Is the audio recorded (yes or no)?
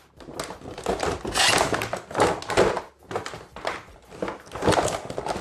yes